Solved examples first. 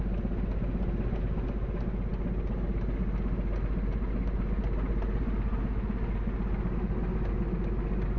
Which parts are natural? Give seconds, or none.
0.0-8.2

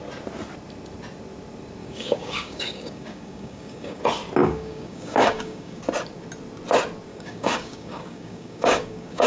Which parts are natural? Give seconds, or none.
0.0-1.8; 4.0-4.4; 5.8-7.1

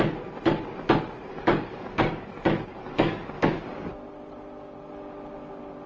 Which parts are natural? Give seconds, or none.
0.0-1.3; 2.3-2.7; 3.9-5.9